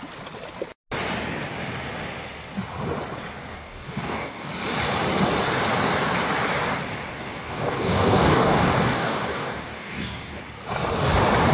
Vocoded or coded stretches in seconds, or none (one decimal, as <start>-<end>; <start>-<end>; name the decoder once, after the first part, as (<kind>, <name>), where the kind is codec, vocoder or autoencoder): 3.5-4.5 (codec, DAC); 7.1-10.4